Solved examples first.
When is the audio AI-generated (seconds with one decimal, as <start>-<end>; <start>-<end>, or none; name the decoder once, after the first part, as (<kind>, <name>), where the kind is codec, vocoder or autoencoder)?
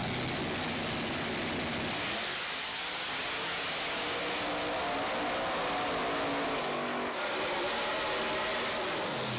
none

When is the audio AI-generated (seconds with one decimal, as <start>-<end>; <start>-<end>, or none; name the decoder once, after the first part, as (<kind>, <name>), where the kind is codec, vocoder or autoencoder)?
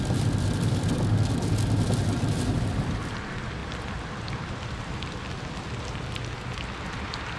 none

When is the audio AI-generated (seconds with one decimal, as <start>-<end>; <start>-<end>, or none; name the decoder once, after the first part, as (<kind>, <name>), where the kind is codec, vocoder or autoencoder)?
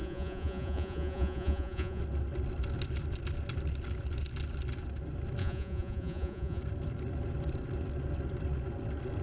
0.0-2.0 (vocoder, Vocos); 5.4-6.6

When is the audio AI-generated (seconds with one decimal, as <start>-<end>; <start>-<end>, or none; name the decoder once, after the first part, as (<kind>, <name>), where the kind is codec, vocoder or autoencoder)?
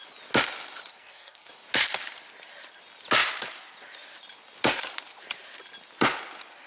0.9-1.5 (codec, SNAC)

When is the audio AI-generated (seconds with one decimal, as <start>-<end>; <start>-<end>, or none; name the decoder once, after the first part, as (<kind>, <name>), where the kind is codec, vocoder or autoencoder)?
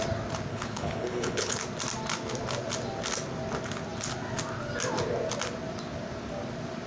0.5-1.6 (codec, HILCodec)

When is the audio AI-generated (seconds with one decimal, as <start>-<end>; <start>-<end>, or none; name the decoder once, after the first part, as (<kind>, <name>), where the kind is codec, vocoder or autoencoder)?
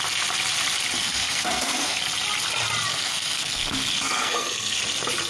1.0-2.0 (codec, SNAC); 2.9-4.8